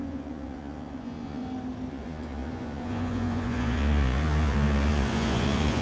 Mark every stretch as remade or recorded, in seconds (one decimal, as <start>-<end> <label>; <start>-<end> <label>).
0.0-1.4 remade; 1.4-1.9 recorded; 1.9-5.8 remade